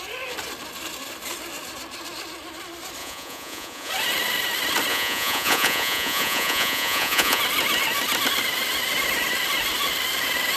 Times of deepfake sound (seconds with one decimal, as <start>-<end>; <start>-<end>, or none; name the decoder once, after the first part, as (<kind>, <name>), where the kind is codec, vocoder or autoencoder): 3.0-3.9 (vocoder, Vocos); 4.9-7.4